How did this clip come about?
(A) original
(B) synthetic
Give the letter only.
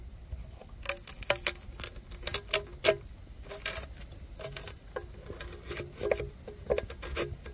A